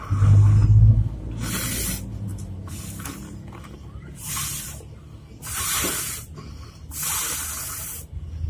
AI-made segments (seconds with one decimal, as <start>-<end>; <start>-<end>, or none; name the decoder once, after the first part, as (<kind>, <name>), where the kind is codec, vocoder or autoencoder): none